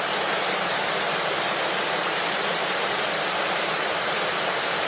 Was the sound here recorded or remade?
recorded